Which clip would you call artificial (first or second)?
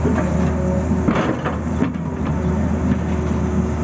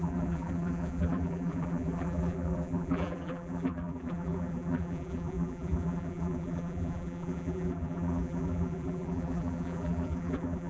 second